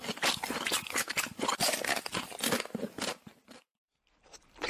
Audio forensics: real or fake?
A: real